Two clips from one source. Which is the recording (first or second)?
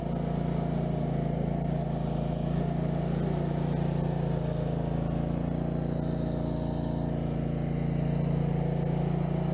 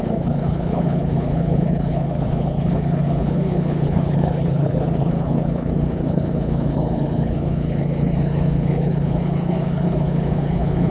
first